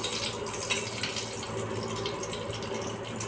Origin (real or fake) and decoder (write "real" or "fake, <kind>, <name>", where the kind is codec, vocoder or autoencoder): real